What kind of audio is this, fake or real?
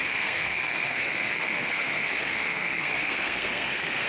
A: fake